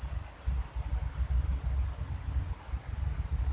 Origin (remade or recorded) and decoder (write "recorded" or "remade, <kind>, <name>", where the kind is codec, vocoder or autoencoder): recorded